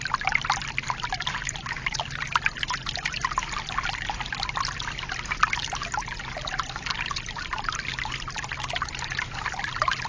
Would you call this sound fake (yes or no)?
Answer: no